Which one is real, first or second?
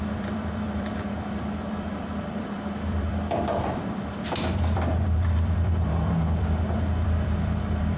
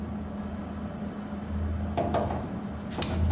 second